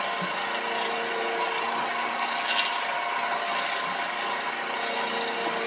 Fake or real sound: real